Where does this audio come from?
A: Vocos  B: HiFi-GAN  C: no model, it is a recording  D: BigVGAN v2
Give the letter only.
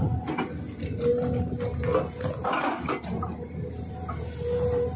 C